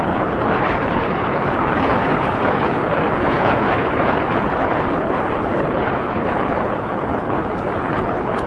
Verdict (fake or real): fake